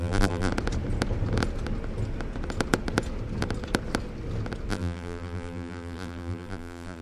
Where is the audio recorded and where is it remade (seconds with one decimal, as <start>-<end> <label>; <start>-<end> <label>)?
0.0-0.5 remade; 0.5-4.7 recorded; 4.7-7.0 remade